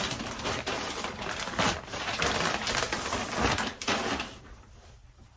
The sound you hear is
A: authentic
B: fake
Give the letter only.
B